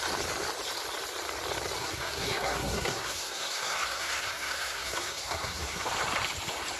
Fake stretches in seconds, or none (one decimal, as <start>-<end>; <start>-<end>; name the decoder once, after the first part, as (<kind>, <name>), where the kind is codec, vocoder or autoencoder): 1.8-5.9 (codec, SNAC)